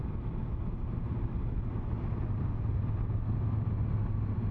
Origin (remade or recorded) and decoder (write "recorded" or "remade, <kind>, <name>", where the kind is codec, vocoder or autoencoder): recorded